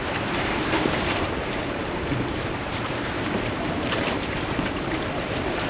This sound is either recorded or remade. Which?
remade